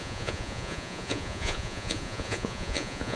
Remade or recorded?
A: remade